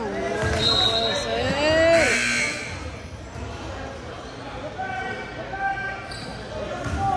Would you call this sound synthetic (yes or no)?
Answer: no